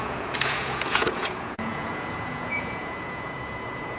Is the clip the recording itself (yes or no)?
no